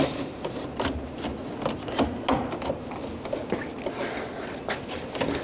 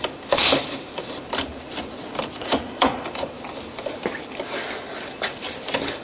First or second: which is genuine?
first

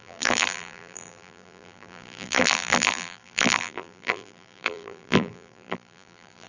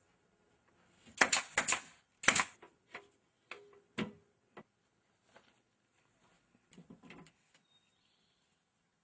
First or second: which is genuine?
second